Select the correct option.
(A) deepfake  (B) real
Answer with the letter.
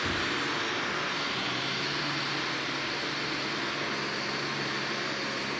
B